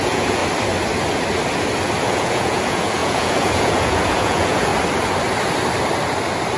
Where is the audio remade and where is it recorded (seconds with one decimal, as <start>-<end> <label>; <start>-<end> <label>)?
0.0-0.4 remade; 0.4-2.0 recorded; 2.0-4.7 remade; 4.7-6.6 recorded